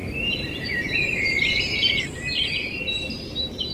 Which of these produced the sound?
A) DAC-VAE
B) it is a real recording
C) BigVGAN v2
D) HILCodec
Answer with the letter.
C